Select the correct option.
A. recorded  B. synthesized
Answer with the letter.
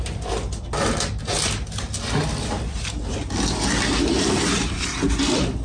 A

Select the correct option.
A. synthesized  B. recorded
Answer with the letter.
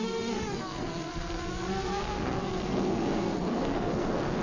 A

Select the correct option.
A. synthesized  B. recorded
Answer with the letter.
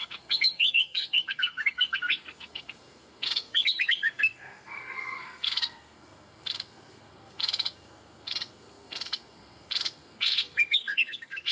A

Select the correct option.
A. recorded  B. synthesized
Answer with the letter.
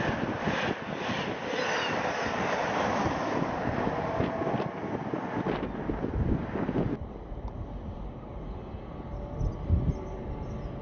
A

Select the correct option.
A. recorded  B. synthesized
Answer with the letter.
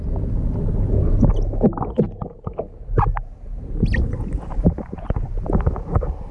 A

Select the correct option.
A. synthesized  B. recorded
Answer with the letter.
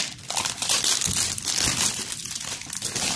B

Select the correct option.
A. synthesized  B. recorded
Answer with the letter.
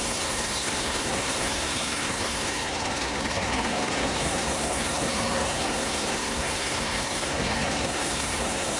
A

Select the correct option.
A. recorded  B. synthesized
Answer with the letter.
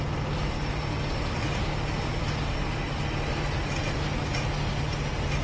A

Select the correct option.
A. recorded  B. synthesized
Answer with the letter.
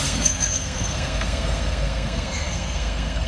B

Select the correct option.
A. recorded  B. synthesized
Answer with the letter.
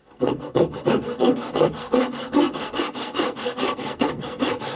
B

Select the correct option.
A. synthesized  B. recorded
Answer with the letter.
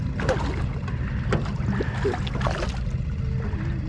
B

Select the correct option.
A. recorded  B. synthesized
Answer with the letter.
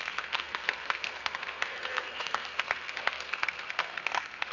B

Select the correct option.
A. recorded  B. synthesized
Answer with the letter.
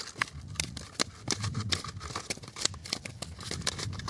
A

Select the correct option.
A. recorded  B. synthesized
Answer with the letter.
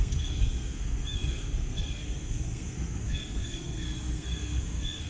B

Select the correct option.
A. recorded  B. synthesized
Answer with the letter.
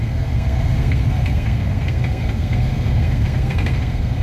B